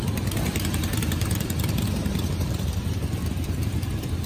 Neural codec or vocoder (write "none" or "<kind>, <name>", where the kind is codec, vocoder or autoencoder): vocoder, BigVGAN v2